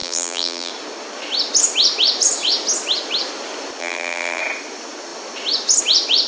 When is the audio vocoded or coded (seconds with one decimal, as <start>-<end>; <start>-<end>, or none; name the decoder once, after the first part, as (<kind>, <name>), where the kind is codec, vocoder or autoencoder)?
0.0-0.7 (vocoder, BigVGAN v2); 3.8-4.4